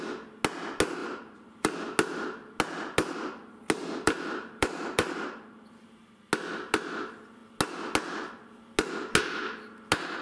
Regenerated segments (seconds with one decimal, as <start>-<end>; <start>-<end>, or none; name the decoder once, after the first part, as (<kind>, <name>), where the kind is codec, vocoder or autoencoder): 1.0-1.7 (vocoder, BigVGAN v2); 3.8-6.0